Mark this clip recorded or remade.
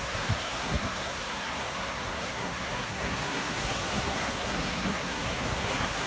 remade